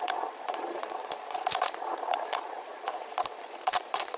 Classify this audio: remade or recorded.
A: remade